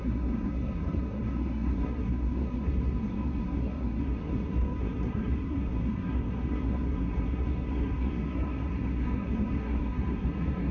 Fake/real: fake